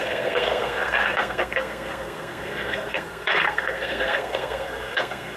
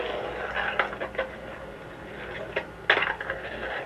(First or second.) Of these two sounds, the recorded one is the second